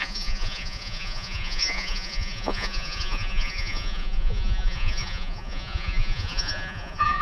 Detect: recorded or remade remade